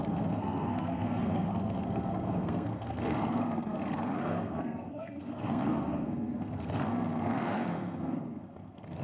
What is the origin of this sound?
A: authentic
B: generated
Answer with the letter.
B